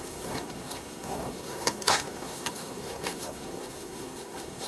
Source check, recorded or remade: remade